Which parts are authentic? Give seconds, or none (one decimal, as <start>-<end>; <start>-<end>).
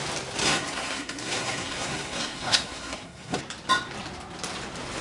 0.0-0.4; 3.4-5.0